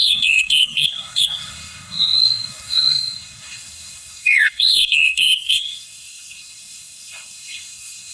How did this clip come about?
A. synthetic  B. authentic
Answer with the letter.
A